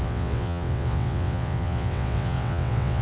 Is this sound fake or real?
fake